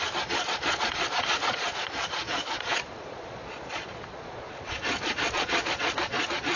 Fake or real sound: fake